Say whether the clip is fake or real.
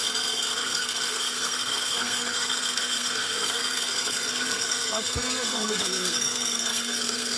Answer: fake